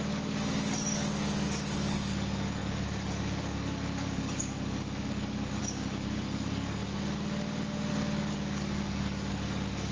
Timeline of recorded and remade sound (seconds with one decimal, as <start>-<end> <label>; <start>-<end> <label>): 0.0-6.8 remade; 6.8-7.9 recorded; 7.9-9.9 remade